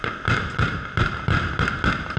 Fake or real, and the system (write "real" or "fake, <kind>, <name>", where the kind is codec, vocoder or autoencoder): real